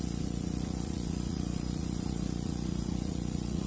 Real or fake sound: fake